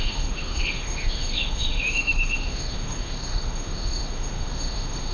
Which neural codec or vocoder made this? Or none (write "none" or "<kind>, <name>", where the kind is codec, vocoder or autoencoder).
autoencoder, DAC-VAE